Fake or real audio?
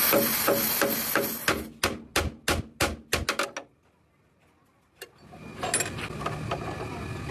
real